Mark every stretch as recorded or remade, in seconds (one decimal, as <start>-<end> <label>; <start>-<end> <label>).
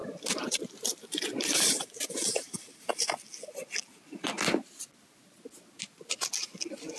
0.0-3.0 remade; 3.0-7.0 recorded